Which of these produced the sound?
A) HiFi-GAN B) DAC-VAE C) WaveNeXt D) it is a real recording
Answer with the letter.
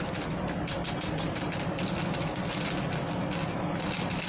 D